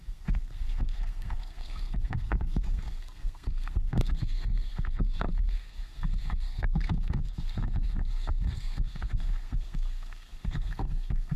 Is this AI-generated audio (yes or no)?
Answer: yes